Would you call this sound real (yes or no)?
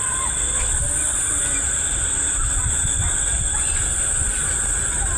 yes